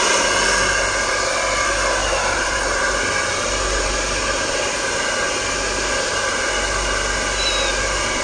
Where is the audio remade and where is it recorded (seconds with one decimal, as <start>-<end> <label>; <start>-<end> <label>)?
0.0-2.0 recorded; 2.0-5.1 remade; 5.1-8.2 recorded